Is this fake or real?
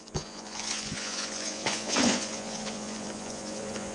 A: fake